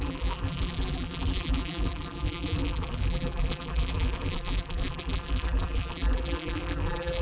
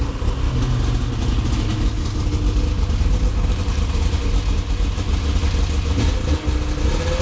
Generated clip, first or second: first